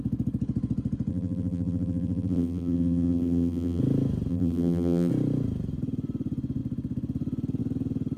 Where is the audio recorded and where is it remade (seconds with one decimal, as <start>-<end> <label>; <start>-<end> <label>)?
0.0-1.1 recorded; 1.1-3.8 remade; 3.8-4.3 recorded; 4.3-5.1 remade; 5.1-8.2 recorded